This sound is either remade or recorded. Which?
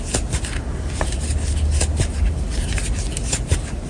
recorded